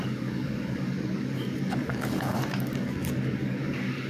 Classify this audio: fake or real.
fake